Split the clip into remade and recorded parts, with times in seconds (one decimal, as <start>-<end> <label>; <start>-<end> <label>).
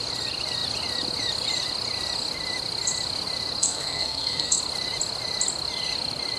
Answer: 0.0-3.6 recorded; 3.6-4.6 remade; 4.6-6.4 recorded